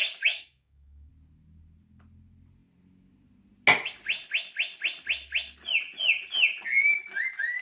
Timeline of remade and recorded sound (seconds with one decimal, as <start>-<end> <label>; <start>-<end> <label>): 0.0-1.1 remade; 1.1-7.6 recorded